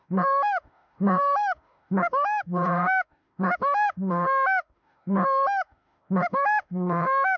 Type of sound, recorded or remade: remade